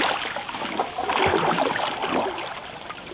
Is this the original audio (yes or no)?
yes